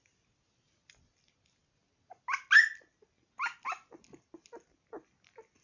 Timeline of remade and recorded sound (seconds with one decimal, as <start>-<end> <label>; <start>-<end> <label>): 0.0-5.6 recorded